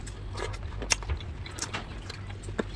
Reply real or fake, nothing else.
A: real